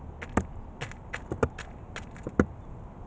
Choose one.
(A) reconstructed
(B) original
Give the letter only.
B